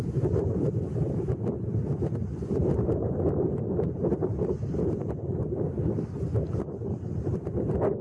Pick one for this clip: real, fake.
real